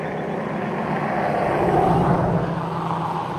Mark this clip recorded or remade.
recorded